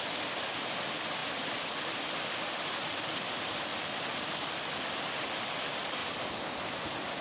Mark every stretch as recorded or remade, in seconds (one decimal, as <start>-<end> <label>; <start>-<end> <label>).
0.0-7.2 recorded